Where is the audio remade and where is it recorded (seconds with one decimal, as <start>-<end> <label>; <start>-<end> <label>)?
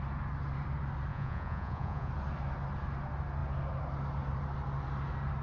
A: 0.0-1.1 recorded; 1.1-2.1 remade; 2.1-5.4 recorded